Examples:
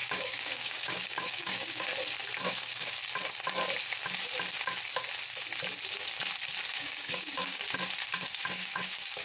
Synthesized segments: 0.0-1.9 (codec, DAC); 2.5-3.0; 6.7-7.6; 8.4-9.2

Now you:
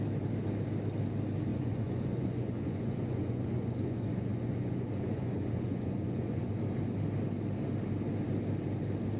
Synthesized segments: 1.5-6.5 (vocoder, Vocos)

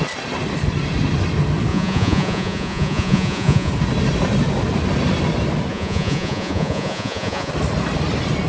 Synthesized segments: 1.7-3.7 (vocoder, Vocos); 5.7-7.5

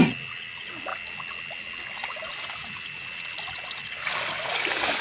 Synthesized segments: none

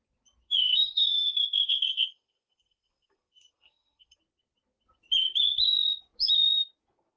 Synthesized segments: 0.6-4.2 (codec, SNAC)

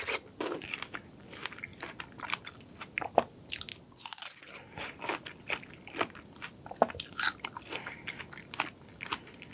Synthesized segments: none

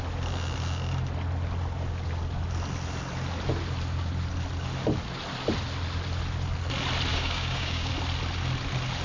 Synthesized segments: 7.1-7.9 (codec, DAC)